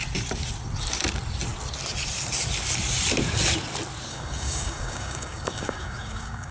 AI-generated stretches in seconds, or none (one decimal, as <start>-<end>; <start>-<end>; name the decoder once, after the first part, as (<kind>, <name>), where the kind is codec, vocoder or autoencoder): 4.1-6.5 (codec, DAC)